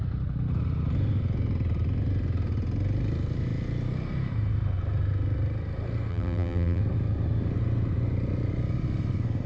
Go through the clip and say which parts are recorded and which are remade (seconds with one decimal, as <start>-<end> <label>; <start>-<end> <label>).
0.0-6.1 recorded; 6.1-6.8 remade; 6.8-9.5 recorded